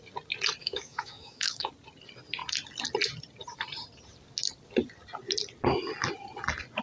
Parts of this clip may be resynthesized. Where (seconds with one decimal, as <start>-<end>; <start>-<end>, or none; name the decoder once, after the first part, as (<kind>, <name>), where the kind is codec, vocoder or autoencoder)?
0.6-1.7 (autoencoder, DAC-VAE)